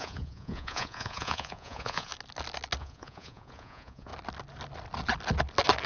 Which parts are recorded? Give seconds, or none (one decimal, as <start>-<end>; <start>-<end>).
2.1-2.8; 4.1-5.9